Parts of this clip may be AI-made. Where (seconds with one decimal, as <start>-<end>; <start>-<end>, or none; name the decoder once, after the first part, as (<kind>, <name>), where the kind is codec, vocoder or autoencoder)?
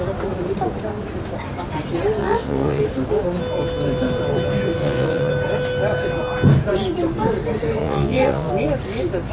2.2-2.8 (vocoder, WaveNeXt); 4.8-5.3; 7.8-8.5